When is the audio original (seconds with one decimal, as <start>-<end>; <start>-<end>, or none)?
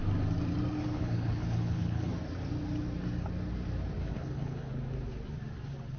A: 0.0-0.8; 2.1-4.0; 4.7-6.0